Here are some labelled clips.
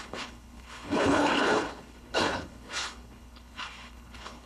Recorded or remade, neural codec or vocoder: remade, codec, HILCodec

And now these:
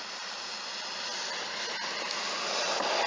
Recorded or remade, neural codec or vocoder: recorded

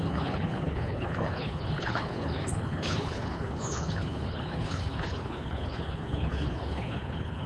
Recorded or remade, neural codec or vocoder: remade, codec, HILCodec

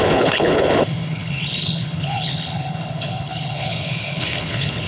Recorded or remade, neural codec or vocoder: remade, codec, HILCodec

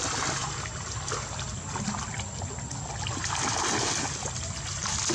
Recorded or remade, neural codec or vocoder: recorded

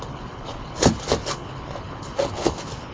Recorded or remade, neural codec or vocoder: remade, codec, HILCodec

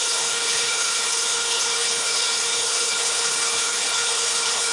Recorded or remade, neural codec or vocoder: remade, codec, HILCodec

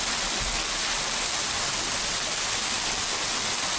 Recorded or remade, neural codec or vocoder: recorded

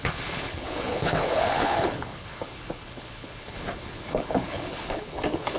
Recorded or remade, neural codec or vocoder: remade, codec, HILCodec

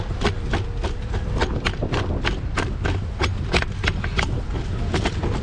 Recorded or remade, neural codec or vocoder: recorded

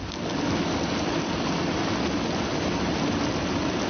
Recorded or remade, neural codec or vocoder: recorded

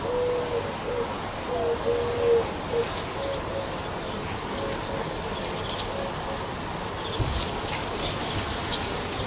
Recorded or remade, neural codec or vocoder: recorded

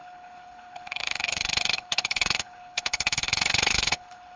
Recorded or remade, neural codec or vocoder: remade, codec, HILCodec